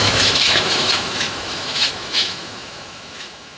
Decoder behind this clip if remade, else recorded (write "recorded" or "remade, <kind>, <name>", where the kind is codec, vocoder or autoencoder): remade, autoencoder, DAC-VAE